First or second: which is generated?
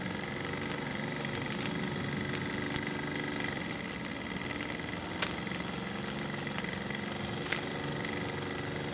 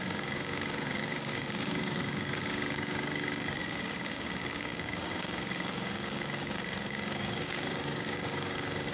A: second